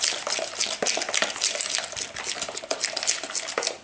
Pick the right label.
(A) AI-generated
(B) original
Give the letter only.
B